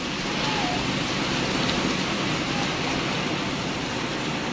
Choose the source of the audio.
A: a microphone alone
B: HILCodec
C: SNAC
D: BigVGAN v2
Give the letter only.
A